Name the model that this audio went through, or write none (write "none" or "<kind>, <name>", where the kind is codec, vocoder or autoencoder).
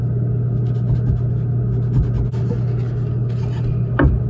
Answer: none